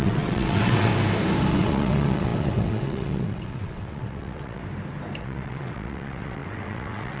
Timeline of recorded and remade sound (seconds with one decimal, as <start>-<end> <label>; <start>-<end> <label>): 0.0-0.9 remade; 0.9-1.5 recorded; 1.5-4.6 remade; 4.6-5.2 recorded; 5.2-7.2 remade

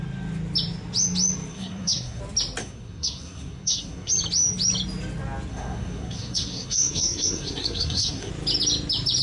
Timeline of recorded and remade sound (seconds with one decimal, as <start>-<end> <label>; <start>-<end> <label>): 0.0-1.5 recorded; 1.5-2.2 remade; 2.2-2.6 recorded; 2.6-4.1 remade; 4.1-5.5 recorded; 5.5-8.3 remade; 8.3-9.2 recorded